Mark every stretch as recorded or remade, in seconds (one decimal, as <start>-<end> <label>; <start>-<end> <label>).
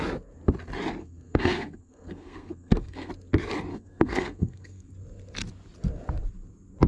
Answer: 0.0-1.0 recorded; 1.0-3.1 remade; 3.1-3.7 recorded; 3.7-4.9 remade; 4.9-6.9 recorded